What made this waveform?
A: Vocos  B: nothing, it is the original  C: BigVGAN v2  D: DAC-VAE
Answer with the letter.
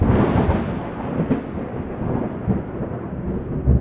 B